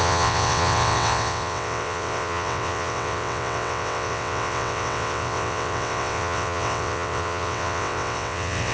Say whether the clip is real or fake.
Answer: fake